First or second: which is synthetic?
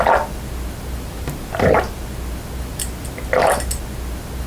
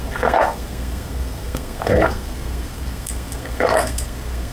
second